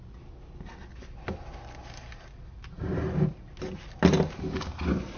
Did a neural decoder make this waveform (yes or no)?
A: no